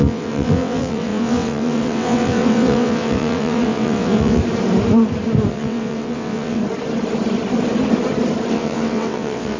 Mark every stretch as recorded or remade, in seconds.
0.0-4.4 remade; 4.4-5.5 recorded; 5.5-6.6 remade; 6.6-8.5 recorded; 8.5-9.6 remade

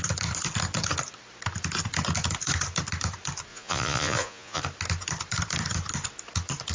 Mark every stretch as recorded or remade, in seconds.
0.0-3.5 recorded; 3.5-4.6 remade; 4.6-6.7 recorded

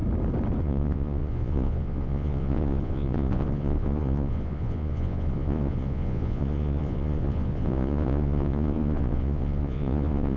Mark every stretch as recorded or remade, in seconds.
0.0-0.6 recorded; 0.6-10.4 remade

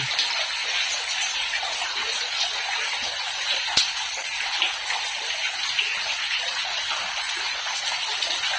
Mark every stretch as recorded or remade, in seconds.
0.0-0.6 recorded; 0.6-2.8 remade; 2.8-5.9 recorded; 5.9-8.0 remade; 8.0-8.6 recorded

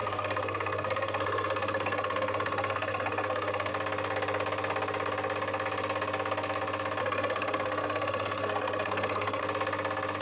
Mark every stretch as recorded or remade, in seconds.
0.0-3.7 remade; 3.7-7.0 recorded; 7.0-9.4 remade; 9.4-10.2 recorded

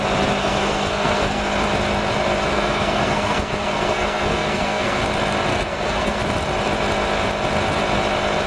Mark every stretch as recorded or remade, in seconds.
0.0-0.4 recorded; 0.4-1.4 remade; 1.4-2.5 recorded; 2.5-5.0 remade; 5.0-5.5 recorded; 5.5-6.2 remade; 6.2-8.5 recorded

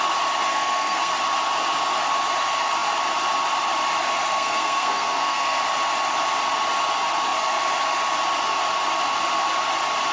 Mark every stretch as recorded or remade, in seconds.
0.0-0.5 recorded; 0.5-1.1 remade; 1.1-4.3 recorded; 4.3-5.6 remade; 5.6-10.1 recorded